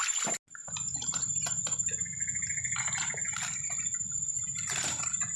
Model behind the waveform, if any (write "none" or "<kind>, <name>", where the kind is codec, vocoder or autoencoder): none